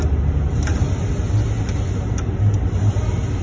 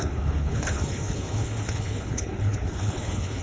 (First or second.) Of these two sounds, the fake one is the second